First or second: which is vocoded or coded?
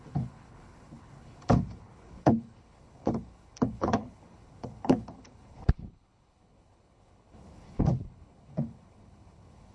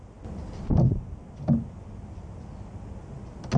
first